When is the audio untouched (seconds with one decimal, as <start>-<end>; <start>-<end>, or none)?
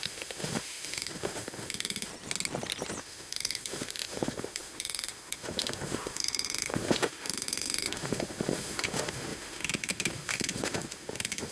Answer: 2.1-3.0